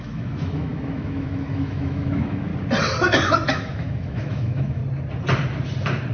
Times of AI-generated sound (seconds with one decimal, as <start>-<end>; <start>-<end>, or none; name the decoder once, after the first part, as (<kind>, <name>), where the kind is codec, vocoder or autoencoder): 0.0-2.5 (autoencoder, DAC-VAE); 3.5-4.8